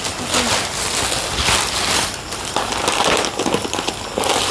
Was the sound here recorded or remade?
recorded